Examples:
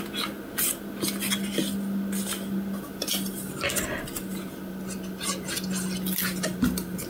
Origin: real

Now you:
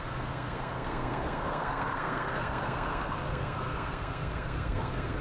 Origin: fake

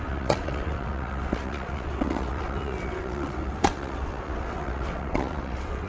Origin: fake